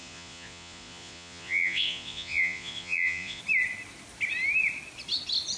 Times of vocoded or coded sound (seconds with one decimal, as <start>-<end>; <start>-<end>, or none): 0.0-3.4